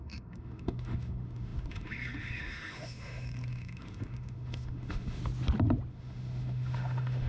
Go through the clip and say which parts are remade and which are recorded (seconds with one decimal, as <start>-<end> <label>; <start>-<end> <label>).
0.0-5.2 remade; 5.2-5.9 recorded; 5.9-7.3 remade